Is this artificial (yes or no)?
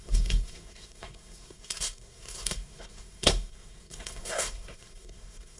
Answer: yes